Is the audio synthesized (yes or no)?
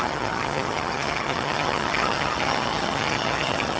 yes